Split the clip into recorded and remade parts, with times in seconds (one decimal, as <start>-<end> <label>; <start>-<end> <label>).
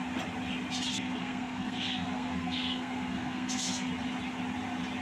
0.0-0.9 recorded; 0.9-3.9 remade; 3.9-5.0 recorded